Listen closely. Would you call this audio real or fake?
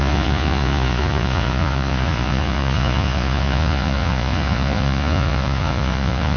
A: fake